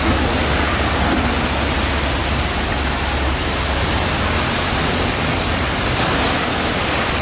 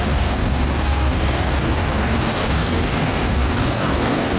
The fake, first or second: second